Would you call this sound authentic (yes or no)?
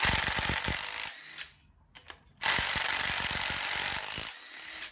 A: yes